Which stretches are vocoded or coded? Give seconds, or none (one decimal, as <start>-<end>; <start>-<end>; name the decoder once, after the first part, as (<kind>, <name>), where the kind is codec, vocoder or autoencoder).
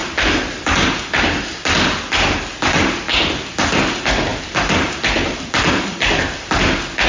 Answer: none